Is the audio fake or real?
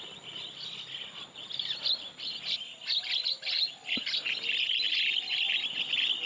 real